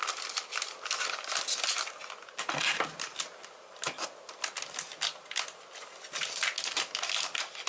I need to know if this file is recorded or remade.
recorded